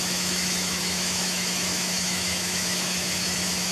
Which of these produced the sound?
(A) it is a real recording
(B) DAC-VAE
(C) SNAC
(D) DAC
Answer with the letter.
B